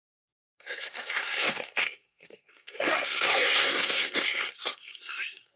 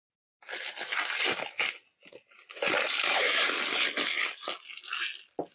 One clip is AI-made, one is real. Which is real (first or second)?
second